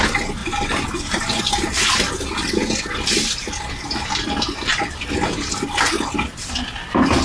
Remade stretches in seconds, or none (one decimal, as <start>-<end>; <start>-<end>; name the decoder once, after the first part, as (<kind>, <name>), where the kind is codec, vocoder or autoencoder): none